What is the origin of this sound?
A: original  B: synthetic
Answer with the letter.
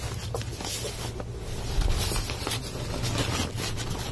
A